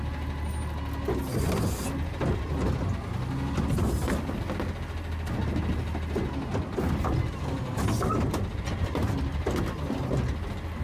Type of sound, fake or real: real